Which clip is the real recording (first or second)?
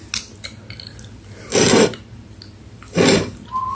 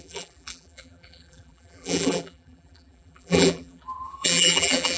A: first